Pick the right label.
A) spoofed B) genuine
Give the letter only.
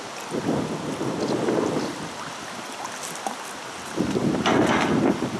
B